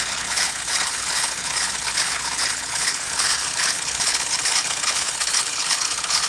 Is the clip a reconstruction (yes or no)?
yes